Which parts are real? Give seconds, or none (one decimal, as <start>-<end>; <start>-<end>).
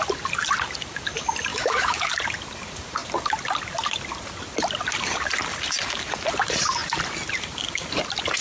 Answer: 0.0-1.5; 2.1-8.4